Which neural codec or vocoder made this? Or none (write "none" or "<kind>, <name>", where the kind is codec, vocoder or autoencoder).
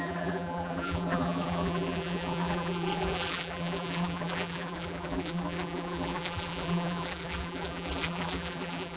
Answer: vocoder, BigVGAN v2